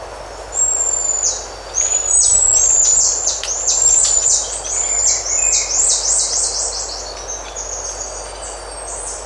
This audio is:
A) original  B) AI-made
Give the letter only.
A